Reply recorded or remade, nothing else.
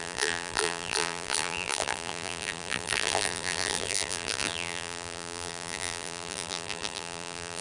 remade